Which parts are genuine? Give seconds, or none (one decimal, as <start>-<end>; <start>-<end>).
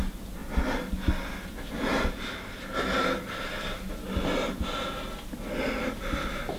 0.0-6.6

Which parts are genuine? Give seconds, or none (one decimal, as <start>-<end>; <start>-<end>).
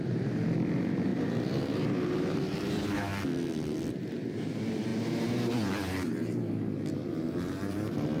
3.1-4.0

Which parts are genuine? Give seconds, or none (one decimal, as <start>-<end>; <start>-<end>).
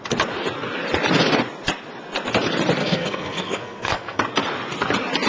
0.0-2.8; 4.2-5.3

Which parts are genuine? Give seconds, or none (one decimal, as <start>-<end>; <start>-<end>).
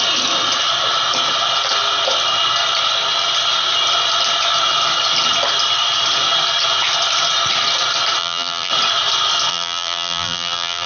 0.0-8.2; 8.7-9.5